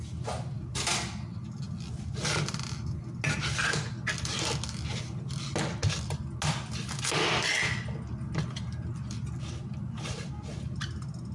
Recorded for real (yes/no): yes